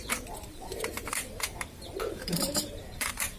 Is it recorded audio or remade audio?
remade